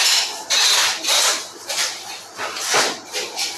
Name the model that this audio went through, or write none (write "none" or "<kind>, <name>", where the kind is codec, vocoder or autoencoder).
none